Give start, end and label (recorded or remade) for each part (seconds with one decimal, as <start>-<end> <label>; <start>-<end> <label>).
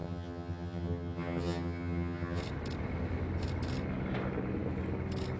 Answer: 0.0-2.4 remade; 2.4-5.4 recorded